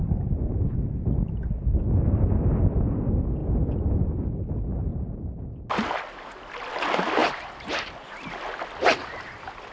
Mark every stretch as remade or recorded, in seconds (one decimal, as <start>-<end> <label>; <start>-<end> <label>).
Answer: 0.0-9.7 recorded